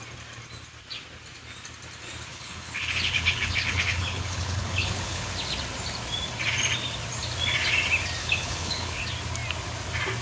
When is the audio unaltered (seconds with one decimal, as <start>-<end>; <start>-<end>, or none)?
0.0-2.3; 5.3-8.2; 9.0-10.2